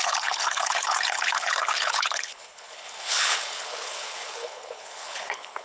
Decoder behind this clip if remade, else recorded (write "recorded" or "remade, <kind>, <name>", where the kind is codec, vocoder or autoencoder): remade, codec, HILCodec